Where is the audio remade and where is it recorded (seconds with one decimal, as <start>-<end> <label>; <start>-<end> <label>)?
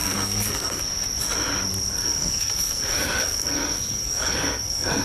0.0-0.8 remade; 0.8-2.0 recorded; 2.0-5.0 remade